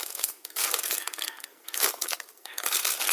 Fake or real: fake